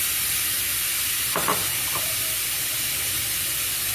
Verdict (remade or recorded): recorded